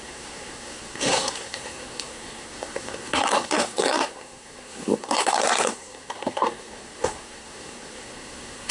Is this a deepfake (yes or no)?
yes